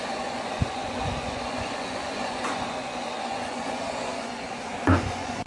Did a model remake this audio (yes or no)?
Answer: yes